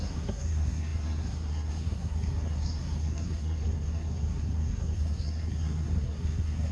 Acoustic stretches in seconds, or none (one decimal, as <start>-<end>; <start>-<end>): none